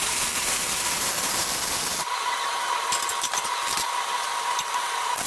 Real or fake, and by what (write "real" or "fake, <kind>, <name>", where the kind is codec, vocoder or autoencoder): real